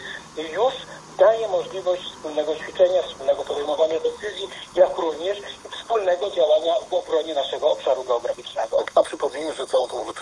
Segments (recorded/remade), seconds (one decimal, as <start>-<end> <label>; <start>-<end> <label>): 0.0-3.2 recorded; 3.2-5.1 remade; 5.1-5.6 recorded; 5.6-7.1 remade; 7.1-8.3 recorded; 8.3-10.2 remade